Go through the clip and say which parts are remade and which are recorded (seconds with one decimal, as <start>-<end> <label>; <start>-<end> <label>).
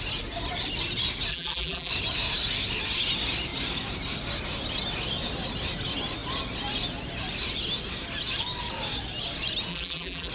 0.0-1.3 recorded; 1.3-1.9 remade; 1.9-9.7 recorded; 9.7-10.3 remade